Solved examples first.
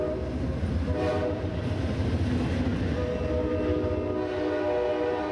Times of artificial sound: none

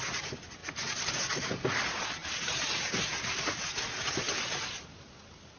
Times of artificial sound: none

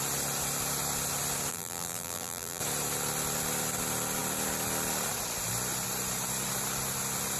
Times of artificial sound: 1.5-2.6 (vocoder, BigVGAN v2)

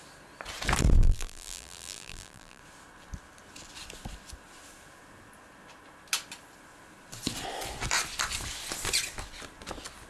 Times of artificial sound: 1.0-2.6 (vocoder, BigVGAN v2)

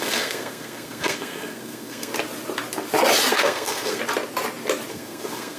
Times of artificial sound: 0.0-2.1 (codec, SNAC); 3.3-4.0; 4.9-5.6

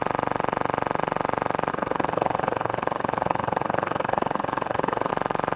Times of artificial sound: 1.7-5.1 (codec, SNAC)